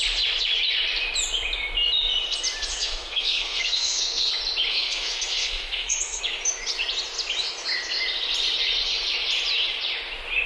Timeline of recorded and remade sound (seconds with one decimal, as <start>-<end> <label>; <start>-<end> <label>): 0.0-2.7 recorded; 2.7-4.3 remade; 4.3-4.7 recorded; 4.7-6.2 remade; 6.2-10.5 recorded